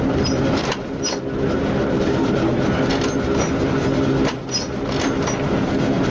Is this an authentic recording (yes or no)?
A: yes